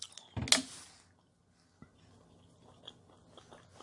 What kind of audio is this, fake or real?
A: real